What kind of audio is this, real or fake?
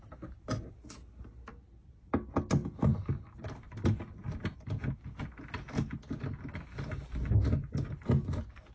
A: real